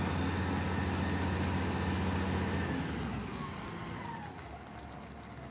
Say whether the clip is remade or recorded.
recorded